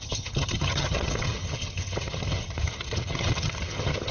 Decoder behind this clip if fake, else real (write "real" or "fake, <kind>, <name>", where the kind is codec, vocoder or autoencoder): fake, vocoder, HiFi-GAN